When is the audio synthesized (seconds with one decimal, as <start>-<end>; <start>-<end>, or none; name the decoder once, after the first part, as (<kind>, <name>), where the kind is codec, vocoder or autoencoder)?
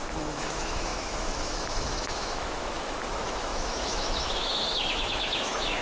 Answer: 0.0-5.8 (autoencoder, DAC-VAE)